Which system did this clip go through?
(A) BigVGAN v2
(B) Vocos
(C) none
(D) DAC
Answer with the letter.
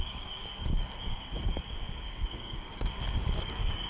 D